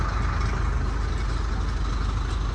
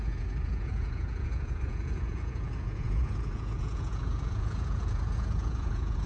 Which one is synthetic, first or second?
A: second